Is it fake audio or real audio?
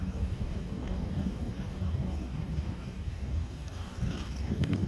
fake